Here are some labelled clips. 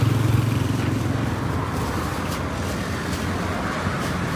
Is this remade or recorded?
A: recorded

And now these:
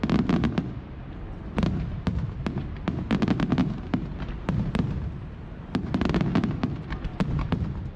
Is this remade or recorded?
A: recorded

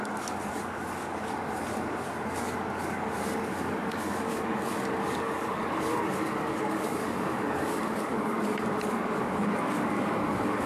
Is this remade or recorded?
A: remade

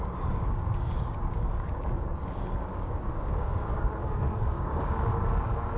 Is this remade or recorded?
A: remade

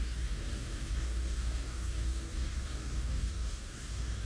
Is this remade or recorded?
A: remade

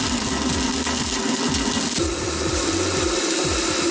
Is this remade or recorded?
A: recorded